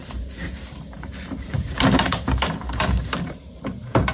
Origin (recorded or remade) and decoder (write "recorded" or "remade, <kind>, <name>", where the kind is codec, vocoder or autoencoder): remade, vocoder, BigVGAN v2